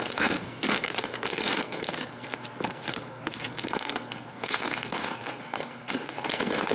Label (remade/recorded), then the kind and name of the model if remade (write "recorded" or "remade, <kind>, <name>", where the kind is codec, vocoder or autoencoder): remade, codec, SNAC